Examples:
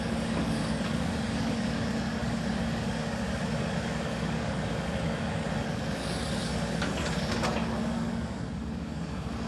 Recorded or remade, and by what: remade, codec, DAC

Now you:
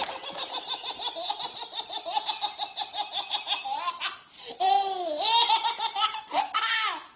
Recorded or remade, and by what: recorded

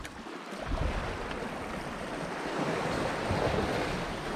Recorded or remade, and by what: recorded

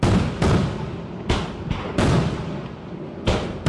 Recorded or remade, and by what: recorded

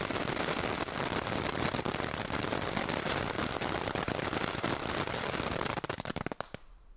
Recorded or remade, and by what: recorded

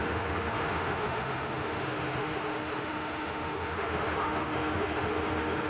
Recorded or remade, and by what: remade, autoencoder, DAC-VAE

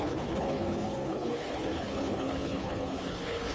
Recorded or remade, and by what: remade, codec, HILCodec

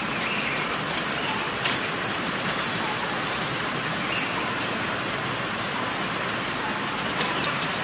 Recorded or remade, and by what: remade, vocoder, BigVGAN v2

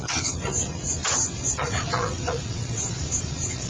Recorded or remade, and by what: remade, vocoder, WaveNeXt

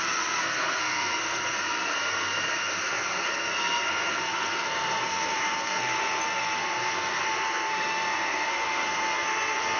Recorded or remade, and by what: remade, codec, SNAC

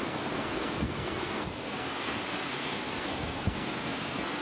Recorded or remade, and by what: remade, codec, SNAC